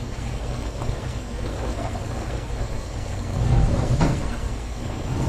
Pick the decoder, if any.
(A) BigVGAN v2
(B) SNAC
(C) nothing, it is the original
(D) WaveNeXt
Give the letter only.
B